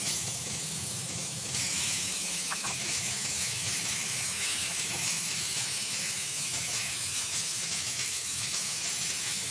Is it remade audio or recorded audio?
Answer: remade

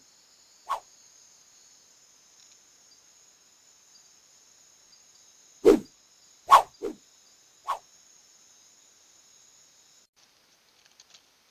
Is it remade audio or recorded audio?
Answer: recorded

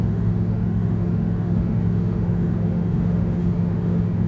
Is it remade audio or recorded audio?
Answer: remade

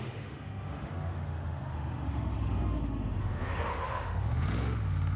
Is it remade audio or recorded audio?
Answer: remade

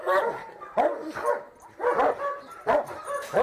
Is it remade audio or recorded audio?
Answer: recorded